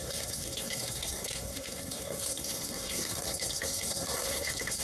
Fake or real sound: fake